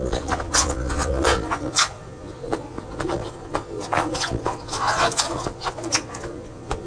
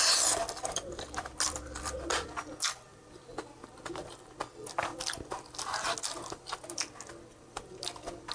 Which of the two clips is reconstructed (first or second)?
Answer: first